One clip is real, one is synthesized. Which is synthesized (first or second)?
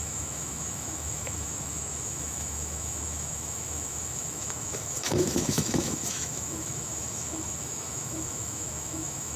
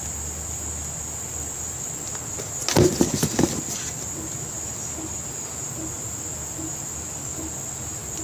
first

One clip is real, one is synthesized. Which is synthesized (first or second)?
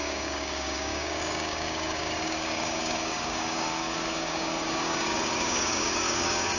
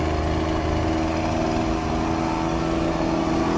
first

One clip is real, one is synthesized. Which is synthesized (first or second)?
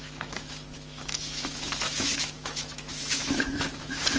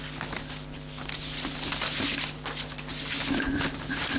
first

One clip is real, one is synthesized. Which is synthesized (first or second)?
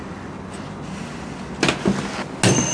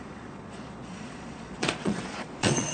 second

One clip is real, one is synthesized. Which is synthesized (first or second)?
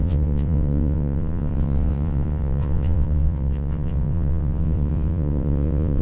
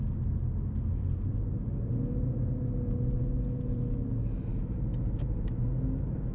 first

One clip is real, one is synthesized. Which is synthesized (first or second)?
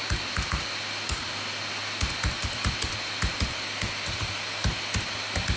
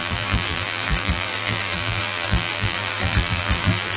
second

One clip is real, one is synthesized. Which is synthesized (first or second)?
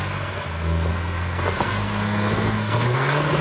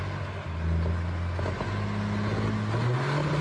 first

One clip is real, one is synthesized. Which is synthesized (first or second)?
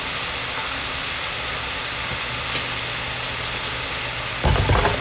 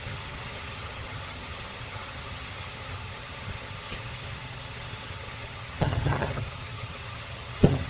second